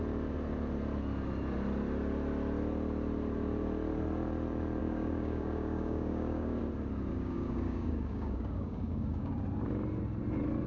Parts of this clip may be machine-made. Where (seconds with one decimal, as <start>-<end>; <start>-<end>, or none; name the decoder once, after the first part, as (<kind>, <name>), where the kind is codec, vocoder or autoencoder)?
4.8-6.6 (codec, DAC); 7.1-9.4